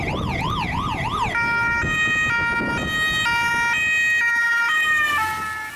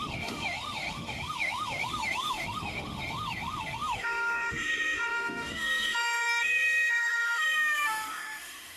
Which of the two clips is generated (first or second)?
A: second